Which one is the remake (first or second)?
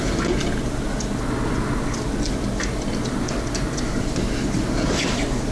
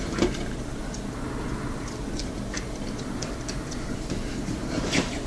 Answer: second